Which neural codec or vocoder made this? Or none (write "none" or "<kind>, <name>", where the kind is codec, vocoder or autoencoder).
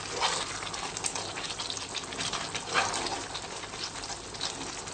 none